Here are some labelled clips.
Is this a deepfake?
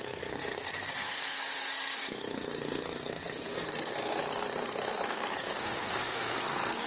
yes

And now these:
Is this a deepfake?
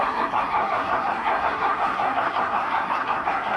yes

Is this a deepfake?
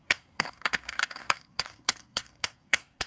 yes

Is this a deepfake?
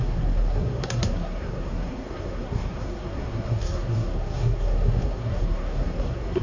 yes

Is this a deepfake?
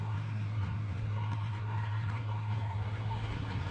yes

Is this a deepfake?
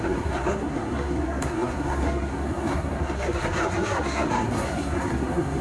yes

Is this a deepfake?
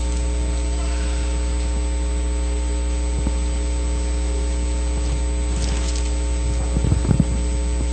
no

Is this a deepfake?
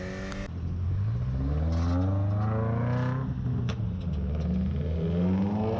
no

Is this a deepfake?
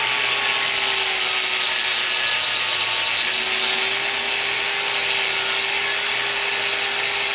no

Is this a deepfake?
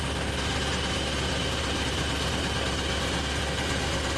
no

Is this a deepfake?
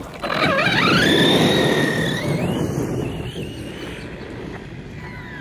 no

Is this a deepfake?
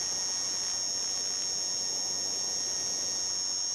no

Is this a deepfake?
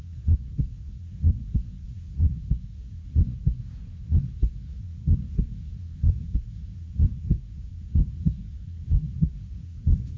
yes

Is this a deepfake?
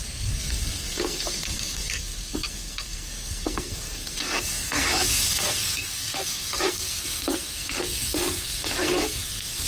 yes